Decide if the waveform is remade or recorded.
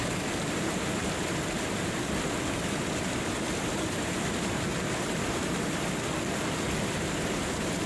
remade